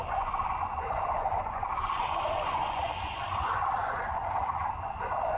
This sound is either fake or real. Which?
fake